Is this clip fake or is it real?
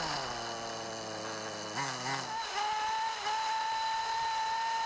real